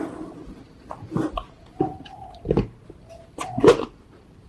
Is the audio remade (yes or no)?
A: yes